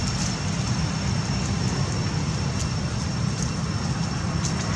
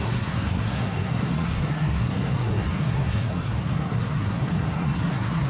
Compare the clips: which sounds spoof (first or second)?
second